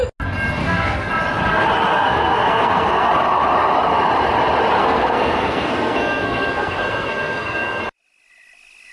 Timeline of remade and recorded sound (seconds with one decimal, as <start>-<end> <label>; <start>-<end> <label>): 0.0-0.6 recorded; 0.6-1.1 remade; 1.1-1.9 recorded; 1.9-3.1 remade; 3.1-4.8 recorded; 4.8-7.8 remade; 7.8-8.9 recorded